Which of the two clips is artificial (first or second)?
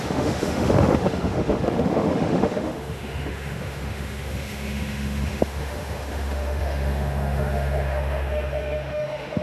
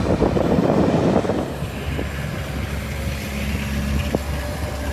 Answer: first